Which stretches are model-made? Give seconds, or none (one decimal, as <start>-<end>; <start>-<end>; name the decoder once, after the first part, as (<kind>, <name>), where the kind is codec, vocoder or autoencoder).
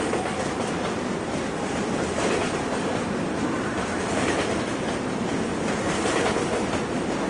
none